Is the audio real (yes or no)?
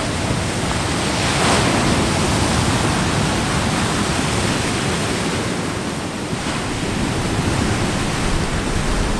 yes